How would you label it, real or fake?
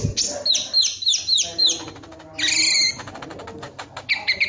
real